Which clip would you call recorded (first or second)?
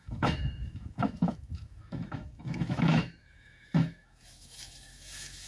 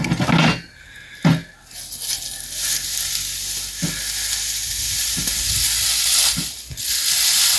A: second